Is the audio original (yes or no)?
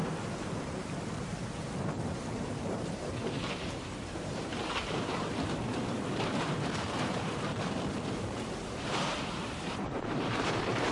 no